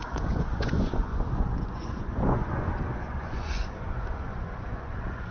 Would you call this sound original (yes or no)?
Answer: no